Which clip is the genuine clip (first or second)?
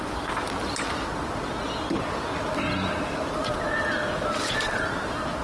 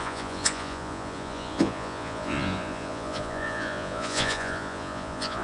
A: first